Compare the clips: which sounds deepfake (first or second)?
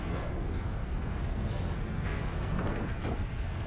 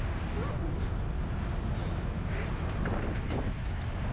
first